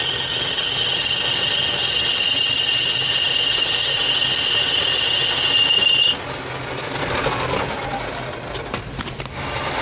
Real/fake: real